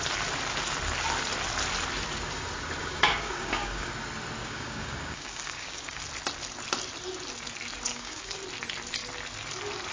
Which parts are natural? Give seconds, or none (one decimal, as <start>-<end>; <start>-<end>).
0.0-2.8; 3.9-4.4; 6.0-7.9; 8.4-9.9